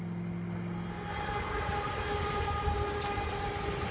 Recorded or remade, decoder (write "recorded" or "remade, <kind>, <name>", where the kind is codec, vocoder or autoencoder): recorded